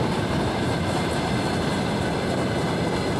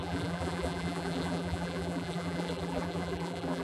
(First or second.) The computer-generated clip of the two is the second